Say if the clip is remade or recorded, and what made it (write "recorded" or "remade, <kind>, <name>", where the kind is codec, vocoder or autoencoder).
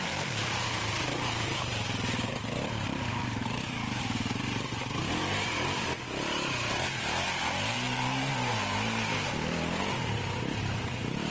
remade, vocoder, BigVGAN v2